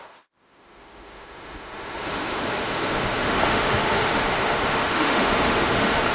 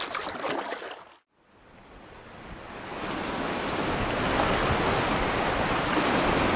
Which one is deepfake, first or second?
first